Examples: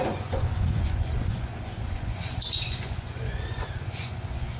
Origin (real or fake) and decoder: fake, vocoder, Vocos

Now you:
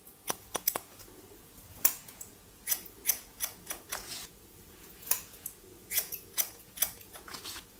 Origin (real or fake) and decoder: fake, vocoder, Vocos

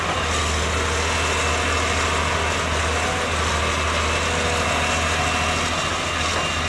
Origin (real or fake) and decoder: real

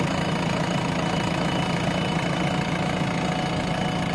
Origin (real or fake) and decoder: real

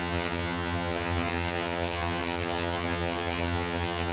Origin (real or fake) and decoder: fake, vocoder, HiFi-GAN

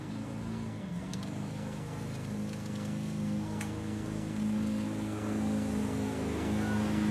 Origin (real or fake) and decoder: fake, codec, SNAC